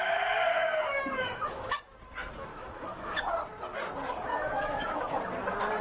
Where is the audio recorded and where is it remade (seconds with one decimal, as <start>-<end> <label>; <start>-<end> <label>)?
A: 0.0-0.5 recorded; 0.5-1.8 remade; 1.8-2.5 recorded; 2.5-3.2 remade; 3.2-4.3 recorded; 4.3-5.2 remade; 5.2-5.8 recorded